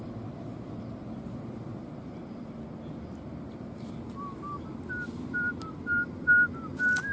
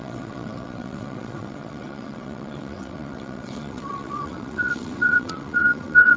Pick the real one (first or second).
first